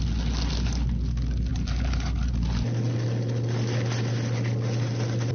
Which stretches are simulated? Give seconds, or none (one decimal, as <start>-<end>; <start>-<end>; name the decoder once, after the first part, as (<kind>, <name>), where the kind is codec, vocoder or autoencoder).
1.5-2.3 (vocoder, BigVGAN v2)